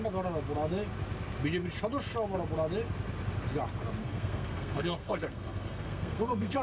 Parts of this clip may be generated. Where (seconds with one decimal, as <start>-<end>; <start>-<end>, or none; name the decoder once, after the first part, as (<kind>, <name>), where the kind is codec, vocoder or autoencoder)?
4.0-6.6 (codec, SNAC)